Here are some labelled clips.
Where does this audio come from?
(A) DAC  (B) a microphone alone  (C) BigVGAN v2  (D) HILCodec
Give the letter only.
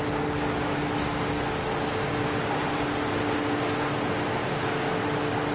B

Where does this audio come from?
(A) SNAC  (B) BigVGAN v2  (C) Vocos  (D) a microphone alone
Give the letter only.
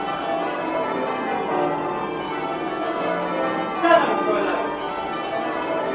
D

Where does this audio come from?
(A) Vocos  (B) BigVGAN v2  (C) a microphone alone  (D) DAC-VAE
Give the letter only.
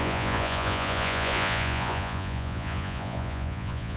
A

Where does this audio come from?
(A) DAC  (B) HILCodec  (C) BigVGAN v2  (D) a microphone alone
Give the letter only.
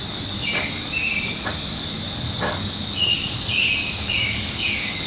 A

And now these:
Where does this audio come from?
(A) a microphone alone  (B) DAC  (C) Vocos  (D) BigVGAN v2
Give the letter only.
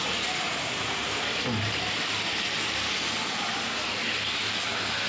A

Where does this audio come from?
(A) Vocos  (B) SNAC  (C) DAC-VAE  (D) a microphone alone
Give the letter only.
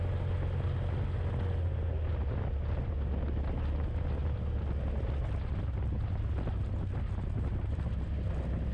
D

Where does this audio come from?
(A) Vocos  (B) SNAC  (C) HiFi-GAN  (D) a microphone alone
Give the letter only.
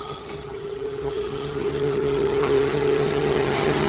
C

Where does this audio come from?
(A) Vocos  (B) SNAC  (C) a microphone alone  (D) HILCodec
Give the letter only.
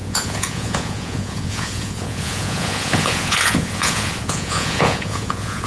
A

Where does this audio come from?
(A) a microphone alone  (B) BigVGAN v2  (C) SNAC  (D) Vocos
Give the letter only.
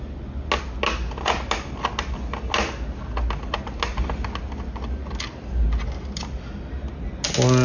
A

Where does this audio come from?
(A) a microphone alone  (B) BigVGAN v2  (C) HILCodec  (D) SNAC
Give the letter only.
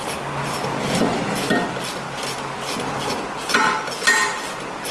A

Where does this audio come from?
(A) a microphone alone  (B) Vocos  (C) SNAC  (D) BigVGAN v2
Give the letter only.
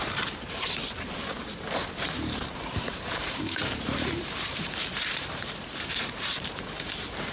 D